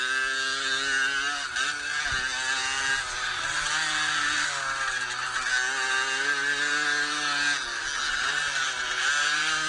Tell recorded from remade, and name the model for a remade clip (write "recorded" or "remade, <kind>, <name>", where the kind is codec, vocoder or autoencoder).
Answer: recorded